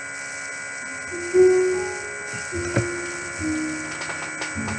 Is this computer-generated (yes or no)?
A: no